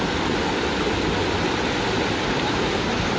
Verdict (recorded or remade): recorded